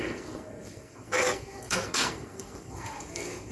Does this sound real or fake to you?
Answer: fake